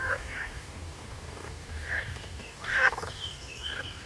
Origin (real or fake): fake